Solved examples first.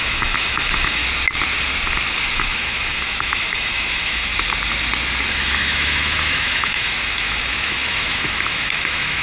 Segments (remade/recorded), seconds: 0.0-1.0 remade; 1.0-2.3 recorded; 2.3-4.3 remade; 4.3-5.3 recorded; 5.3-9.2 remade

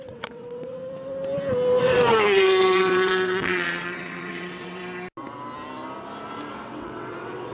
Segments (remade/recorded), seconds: 0.0-0.8 remade; 0.8-1.8 recorded; 1.8-4.8 remade; 4.8-6.5 recorded; 6.5-7.5 remade

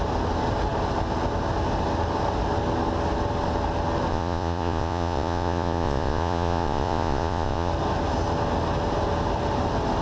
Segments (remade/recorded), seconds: 0.0-4.1 recorded; 4.1-7.7 remade; 7.7-10.0 recorded

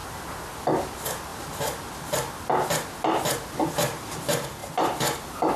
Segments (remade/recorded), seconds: 0.0-5.6 recorded

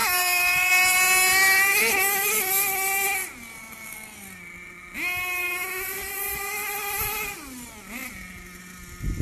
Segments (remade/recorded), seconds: 0.0-0.7 remade; 0.7-9.2 recorded

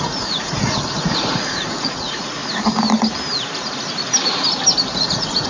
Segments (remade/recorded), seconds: 0.0-2.4 remade; 2.4-5.0 recorded; 5.0-5.5 remade